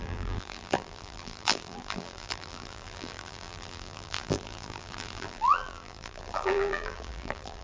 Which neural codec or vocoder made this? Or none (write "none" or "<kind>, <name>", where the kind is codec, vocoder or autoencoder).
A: vocoder, BigVGAN v2